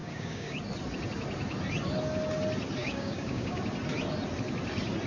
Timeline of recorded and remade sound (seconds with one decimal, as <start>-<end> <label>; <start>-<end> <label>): 0.0-0.6 remade; 0.6-2.8 recorded; 2.8-3.6 remade; 3.6-5.1 recorded